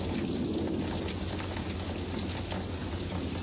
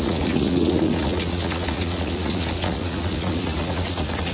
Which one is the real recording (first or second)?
first